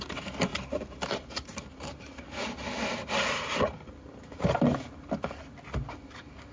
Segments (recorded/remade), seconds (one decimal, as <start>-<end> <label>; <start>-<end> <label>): 0.0-6.5 recorded